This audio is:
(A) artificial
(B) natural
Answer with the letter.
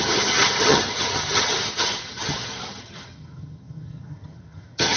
A